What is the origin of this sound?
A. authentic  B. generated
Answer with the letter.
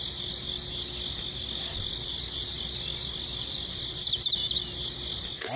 A